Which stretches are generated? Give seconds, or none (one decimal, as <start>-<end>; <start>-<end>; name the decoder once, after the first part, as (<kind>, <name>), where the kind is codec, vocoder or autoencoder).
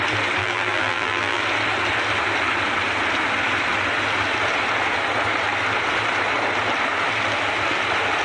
0.4-1.4 (vocoder, BigVGAN v2)